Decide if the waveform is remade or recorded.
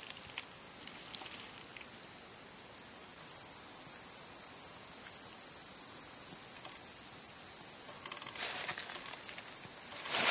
recorded